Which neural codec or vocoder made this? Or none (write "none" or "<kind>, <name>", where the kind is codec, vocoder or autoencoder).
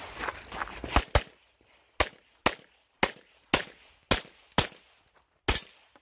none